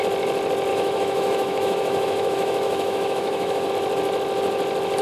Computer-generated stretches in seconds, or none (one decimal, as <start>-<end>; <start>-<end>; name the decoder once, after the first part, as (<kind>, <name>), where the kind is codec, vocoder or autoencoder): 0.7-3.7 (autoencoder, DAC-VAE)